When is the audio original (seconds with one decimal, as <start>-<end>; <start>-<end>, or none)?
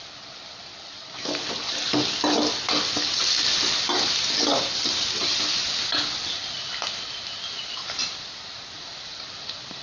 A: 0.0-9.8